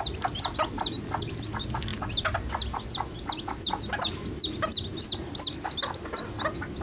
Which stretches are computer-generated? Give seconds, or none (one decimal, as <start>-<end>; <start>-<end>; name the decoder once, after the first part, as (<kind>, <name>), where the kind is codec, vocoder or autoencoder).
none